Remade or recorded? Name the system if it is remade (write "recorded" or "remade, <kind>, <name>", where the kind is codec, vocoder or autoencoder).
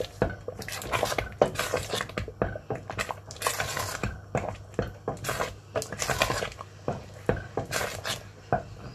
recorded